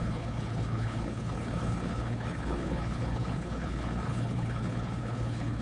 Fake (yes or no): yes